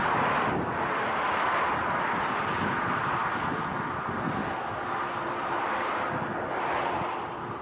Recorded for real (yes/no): yes